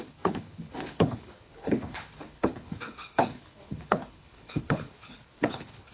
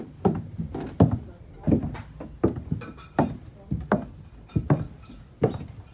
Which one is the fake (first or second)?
first